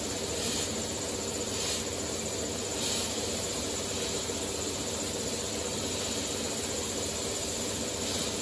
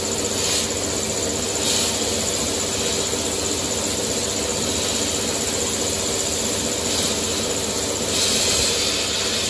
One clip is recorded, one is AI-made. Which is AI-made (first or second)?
first